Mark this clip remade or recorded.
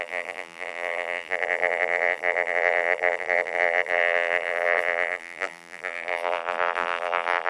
remade